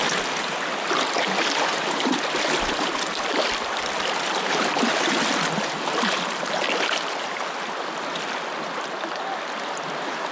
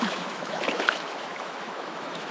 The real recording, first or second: first